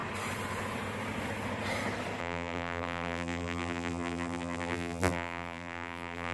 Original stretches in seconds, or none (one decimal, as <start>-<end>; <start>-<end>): 0.0-2.2